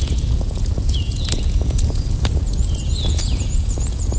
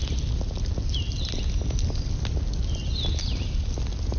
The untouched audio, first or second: second